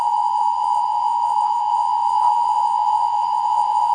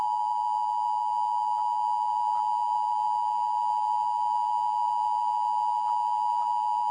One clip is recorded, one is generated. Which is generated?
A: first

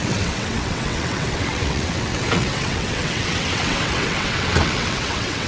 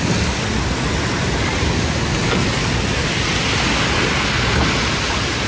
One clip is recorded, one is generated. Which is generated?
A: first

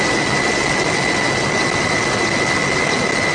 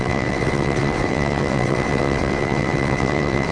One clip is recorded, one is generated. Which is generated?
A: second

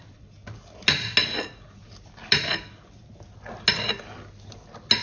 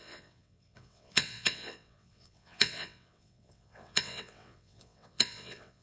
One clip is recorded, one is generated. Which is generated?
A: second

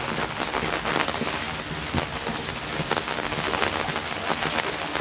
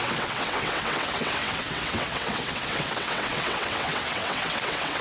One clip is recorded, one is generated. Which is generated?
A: second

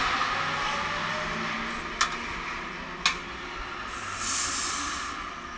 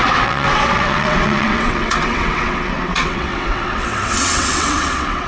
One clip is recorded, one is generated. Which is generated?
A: second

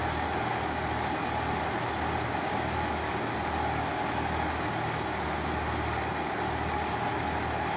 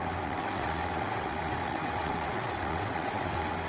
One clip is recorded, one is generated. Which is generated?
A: second